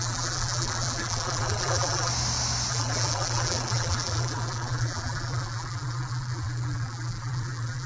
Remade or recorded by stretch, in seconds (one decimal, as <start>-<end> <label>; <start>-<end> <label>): 0.0-2.1 remade; 2.1-2.7 recorded; 2.7-7.9 remade